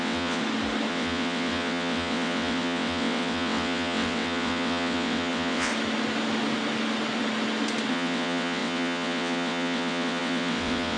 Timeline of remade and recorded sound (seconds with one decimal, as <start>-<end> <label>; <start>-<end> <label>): 0.0-0.4 remade; 0.4-0.9 recorded; 0.9-5.7 remade; 5.7-7.9 recorded; 7.9-11.0 remade

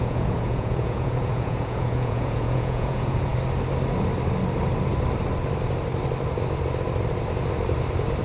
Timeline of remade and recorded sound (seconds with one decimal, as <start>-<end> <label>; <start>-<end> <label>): 0.0-3.3 remade; 3.3-8.2 recorded